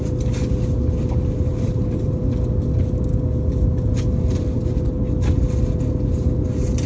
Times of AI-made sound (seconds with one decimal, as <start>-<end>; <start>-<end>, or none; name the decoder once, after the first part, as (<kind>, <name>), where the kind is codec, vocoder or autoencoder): 1.5-2.2 (vocoder, BigVGAN v2)